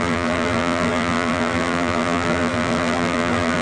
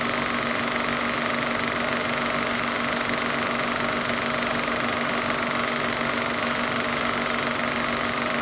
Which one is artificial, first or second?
first